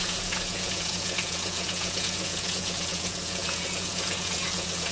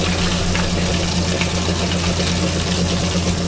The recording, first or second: second